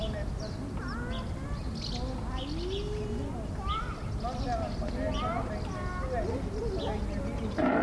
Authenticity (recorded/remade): recorded